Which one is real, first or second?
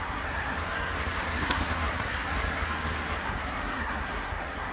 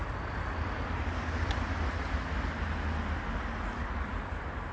second